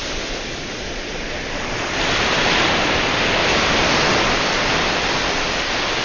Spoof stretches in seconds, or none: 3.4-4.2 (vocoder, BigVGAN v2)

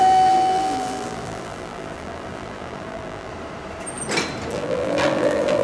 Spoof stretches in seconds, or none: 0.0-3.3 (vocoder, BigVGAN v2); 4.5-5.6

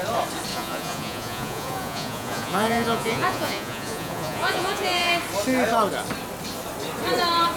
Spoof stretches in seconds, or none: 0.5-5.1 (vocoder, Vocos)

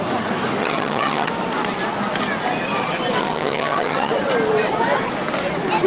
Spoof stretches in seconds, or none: 0.6-1.3 (vocoder, HiFi-GAN); 3.2-4.1

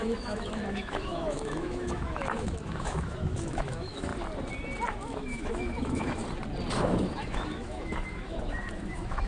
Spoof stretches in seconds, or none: 0.0-4.1 (autoencoder, DAC-VAE); 4.9-6.2; 6.8-9.3

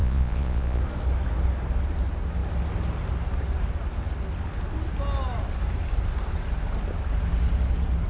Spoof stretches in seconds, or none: 0.0-0.8 (vocoder, Vocos)

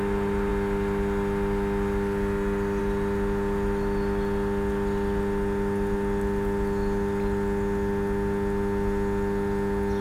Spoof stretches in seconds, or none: none